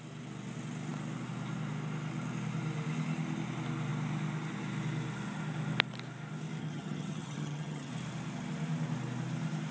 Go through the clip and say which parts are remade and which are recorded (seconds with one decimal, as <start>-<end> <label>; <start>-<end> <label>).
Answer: 0.0-6.6 recorded; 6.6-7.9 remade; 7.9-9.7 recorded